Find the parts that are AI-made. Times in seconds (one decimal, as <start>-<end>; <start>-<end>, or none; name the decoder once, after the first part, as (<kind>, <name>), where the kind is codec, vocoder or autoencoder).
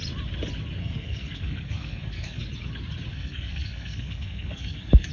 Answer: 0.8-2.4 (codec, SNAC); 3.1-5.1